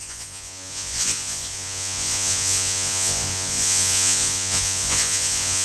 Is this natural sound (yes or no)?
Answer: no